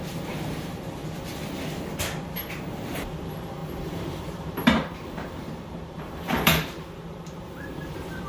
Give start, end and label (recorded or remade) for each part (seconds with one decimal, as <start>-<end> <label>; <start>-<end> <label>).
0.0-1.0 remade; 1.0-2.7 recorded; 2.7-8.3 remade